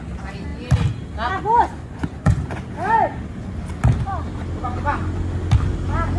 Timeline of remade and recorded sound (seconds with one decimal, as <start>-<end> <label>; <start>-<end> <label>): 0.0-1.8 recorded; 1.8-2.7 remade; 2.7-6.2 recorded

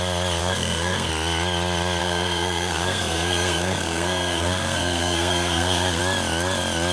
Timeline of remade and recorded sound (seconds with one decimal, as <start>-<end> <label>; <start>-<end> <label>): 0.0-0.4 recorded; 0.4-1.1 remade; 1.1-2.0 recorded; 2.0-6.0 remade; 6.0-6.9 recorded

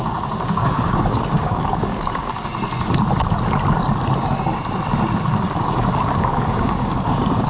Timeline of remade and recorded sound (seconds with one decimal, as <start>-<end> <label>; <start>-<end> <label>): 0.0-2.5 remade; 2.5-5.3 recorded; 5.3-7.5 remade

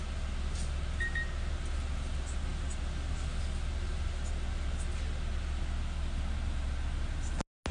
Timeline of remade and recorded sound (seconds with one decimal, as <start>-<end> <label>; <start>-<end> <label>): 0.0-7.7 recorded

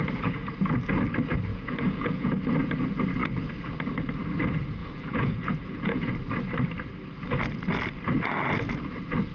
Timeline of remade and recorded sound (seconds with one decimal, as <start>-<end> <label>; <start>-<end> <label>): 0.0-1.5 recorded; 1.5-2.4 remade; 2.4-4.8 recorded; 4.8-6.1 remade; 6.1-9.3 recorded

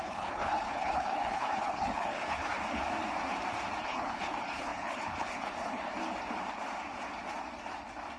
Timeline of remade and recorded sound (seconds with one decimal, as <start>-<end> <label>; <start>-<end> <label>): 0.0-2.6 remade; 2.6-3.8 recorded; 3.8-5.9 remade; 5.9-8.2 recorded